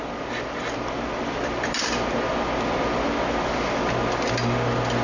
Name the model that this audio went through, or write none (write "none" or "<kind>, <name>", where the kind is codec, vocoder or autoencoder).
none